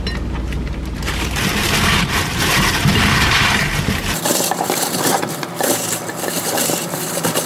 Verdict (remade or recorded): remade